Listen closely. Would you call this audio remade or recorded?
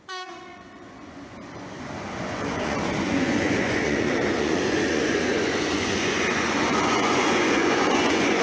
remade